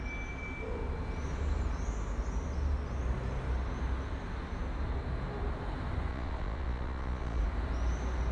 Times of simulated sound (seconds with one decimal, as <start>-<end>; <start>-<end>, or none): 6.1-7.4